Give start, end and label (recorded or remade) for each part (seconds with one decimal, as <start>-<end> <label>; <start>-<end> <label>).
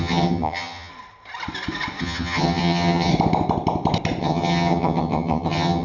0.0-0.9 remade; 0.9-2.0 recorded; 2.0-3.1 remade; 3.1-4.2 recorded; 4.2-5.8 remade